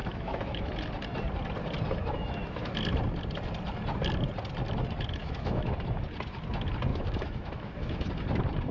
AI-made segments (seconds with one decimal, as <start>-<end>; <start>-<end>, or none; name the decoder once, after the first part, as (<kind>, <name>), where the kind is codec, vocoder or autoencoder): 0.0-0.7 (autoencoder, DAC-VAE); 2.0-2.7; 5.2-5.7; 6.9-8.1